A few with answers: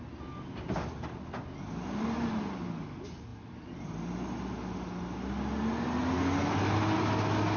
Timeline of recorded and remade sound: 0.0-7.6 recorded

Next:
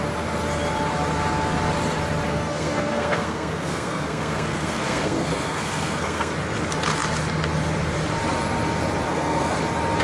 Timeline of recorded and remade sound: 0.0-2.3 recorded; 2.3-6.3 remade; 6.3-9.1 recorded; 9.1-9.6 remade; 9.6-10.0 recorded

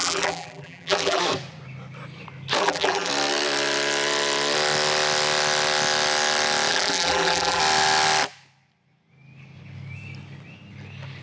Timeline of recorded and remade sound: 0.0-1.2 remade; 1.2-2.6 recorded; 2.6-3.1 remade; 3.1-6.7 recorded; 6.7-7.6 remade; 7.6-11.2 recorded